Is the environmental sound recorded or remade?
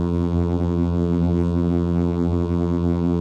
remade